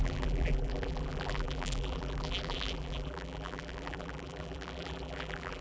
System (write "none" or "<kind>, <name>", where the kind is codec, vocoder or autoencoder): vocoder, BigVGAN v2